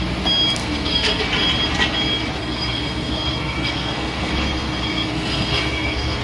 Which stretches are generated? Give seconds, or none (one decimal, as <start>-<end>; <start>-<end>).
0.6-1.2; 2.4-6.2